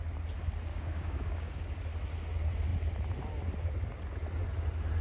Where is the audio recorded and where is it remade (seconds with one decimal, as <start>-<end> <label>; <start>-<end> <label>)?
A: 0.0-0.7 recorded; 0.7-1.8 remade; 1.8-5.0 recorded